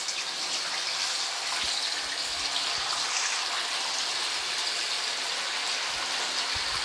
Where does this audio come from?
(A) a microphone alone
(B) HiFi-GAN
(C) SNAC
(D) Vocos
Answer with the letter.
A